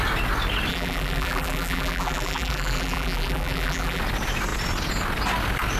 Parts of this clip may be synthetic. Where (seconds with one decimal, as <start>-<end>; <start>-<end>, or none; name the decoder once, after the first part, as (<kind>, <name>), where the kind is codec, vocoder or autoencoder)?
0.7-4.0 (vocoder, BigVGAN v2)